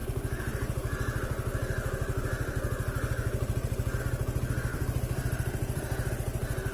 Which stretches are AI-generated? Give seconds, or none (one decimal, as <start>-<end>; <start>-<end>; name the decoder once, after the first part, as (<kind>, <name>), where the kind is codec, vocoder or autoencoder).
4.7-6.1 (vocoder, BigVGAN v2)